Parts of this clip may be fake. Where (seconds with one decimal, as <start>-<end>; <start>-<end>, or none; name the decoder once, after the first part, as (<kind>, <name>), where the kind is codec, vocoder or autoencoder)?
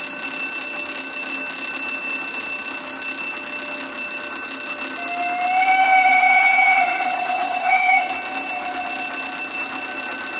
6.1-8.0 (vocoder, HiFi-GAN)